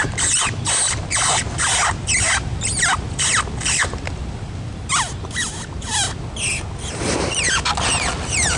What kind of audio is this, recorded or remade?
recorded